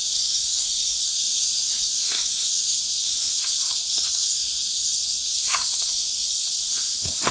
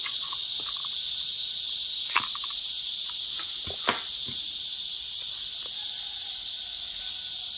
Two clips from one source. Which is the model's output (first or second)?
first